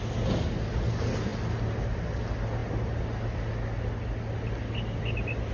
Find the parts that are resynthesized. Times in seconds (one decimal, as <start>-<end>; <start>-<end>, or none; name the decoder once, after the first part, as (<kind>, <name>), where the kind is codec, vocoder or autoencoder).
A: none